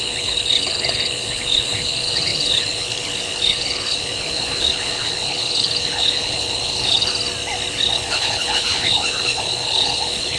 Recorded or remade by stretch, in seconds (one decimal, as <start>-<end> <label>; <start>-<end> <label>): 0.0-7.1 remade; 7.1-7.8 recorded; 7.8-10.4 remade